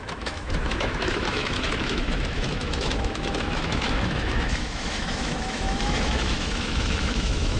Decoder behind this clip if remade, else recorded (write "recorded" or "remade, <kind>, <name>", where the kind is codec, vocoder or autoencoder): remade, autoencoder, DAC-VAE